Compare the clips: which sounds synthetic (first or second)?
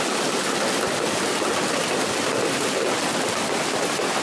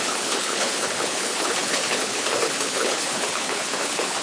second